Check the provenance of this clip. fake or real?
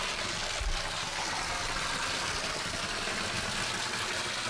real